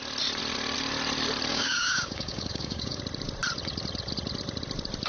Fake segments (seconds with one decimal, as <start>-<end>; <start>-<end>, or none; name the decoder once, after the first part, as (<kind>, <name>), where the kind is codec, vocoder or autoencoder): 1.5-3.0 (codec, DAC)